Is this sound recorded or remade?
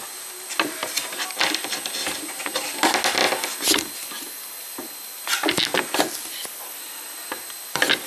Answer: recorded